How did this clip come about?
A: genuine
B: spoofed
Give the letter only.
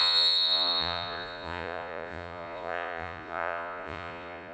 B